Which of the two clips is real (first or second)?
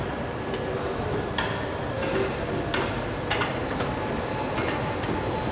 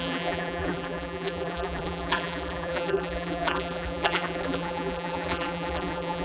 first